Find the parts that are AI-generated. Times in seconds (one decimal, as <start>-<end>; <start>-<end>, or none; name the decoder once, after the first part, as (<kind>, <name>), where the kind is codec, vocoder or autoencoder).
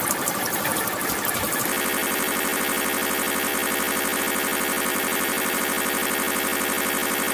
2.0-2.6 (vocoder, BigVGAN v2); 4.9-5.6